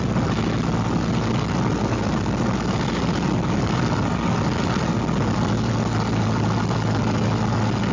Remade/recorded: recorded